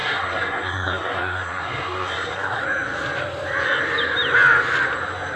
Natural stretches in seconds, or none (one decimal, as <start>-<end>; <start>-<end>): 2.6-5.4